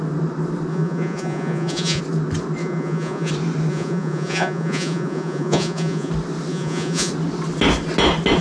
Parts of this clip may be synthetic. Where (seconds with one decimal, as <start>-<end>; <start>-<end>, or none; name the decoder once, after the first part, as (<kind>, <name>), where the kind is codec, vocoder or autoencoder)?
0.7-2.0 (vocoder, Vocos); 2.6-3.3; 3.7-6.1; 6.5-7.1

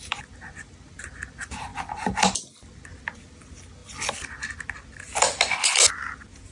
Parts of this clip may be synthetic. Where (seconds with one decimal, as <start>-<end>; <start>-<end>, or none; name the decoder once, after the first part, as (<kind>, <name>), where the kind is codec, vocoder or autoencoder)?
none